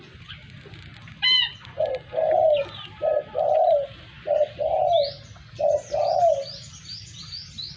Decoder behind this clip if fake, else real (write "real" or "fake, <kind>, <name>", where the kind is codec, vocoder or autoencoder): real